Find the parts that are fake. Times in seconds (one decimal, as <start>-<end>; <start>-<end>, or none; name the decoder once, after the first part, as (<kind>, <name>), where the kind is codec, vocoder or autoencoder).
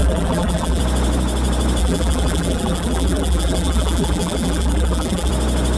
0.0-0.8 (vocoder, BigVGAN v2); 1.8-5.3